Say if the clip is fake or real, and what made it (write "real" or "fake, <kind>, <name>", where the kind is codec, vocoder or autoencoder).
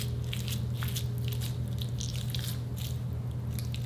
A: real